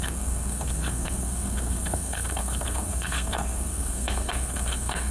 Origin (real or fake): fake